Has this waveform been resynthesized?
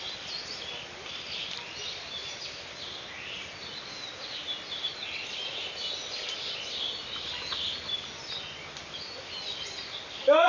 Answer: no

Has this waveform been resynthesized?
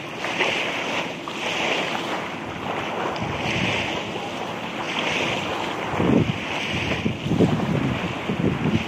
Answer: no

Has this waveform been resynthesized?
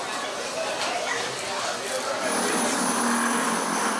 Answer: no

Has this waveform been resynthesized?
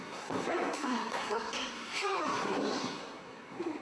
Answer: yes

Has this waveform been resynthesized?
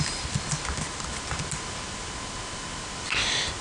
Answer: no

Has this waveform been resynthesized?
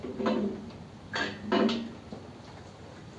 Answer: no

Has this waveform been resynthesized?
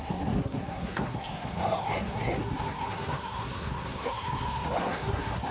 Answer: yes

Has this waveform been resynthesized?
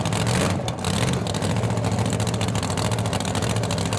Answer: no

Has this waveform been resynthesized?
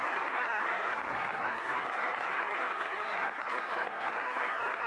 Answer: yes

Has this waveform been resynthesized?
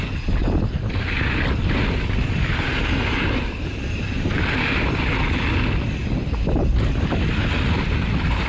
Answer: no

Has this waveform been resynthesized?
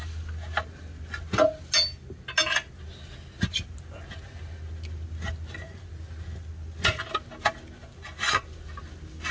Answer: no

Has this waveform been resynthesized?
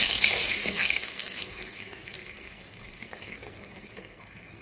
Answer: yes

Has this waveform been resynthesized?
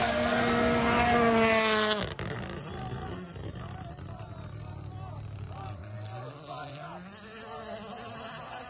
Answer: no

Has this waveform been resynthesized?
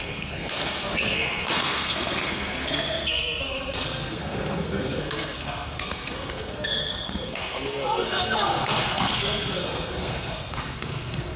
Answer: yes